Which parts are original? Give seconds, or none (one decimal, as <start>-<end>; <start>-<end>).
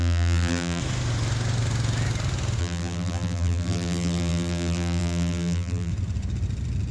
0.8-2.6; 5.9-6.9